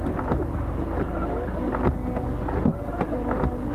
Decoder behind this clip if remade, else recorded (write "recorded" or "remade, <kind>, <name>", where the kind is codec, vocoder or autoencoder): recorded